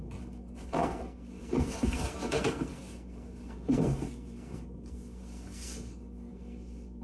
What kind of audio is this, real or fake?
fake